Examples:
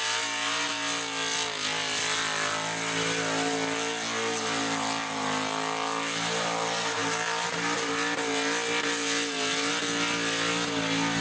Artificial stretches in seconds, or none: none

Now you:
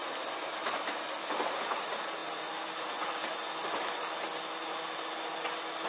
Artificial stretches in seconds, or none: 1.4-2.2

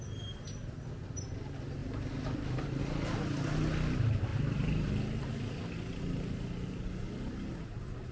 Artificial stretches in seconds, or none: 1.8-2.8; 4.3-4.9

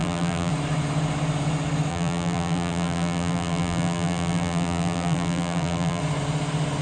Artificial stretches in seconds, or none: 0.0-0.5; 1.9-6.0